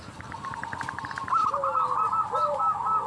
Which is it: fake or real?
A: real